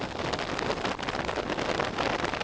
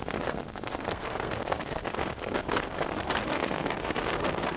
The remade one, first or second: second